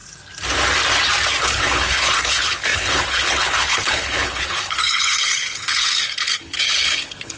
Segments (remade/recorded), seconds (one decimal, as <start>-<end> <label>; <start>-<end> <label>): 0.0-1.4 recorded; 1.4-7.4 remade

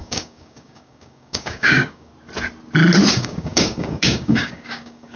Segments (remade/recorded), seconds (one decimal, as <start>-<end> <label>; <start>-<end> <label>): 0.0-2.1 remade; 2.1-3.1 recorded; 3.1-5.2 remade

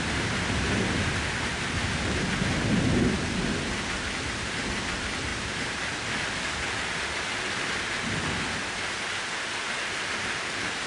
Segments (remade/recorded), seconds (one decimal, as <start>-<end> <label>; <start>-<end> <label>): 0.0-10.9 recorded

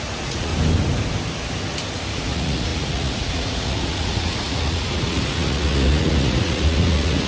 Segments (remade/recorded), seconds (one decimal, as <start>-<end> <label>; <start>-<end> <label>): 0.0-0.5 remade; 0.5-2.1 recorded; 2.1-7.3 remade

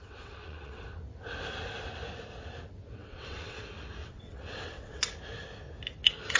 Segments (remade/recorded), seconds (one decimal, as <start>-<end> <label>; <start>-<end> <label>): 0.0-0.8 remade; 0.8-3.0 recorded; 3.0-3.6 remade; 3.6-4.0 recorded; 4.0-5.0 remade; 5.0-6.4 recorded